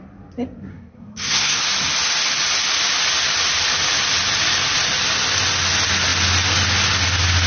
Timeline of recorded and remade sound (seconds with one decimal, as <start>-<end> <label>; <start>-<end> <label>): 0.0-0.7 recorded; 0.7-1.6 remade; 1.6-7.5 recorded